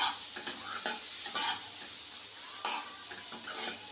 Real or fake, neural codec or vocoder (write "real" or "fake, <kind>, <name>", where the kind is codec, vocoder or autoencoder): real